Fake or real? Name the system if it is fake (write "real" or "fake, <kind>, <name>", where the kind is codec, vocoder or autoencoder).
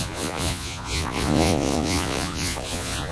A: fake, vocoder, Vocos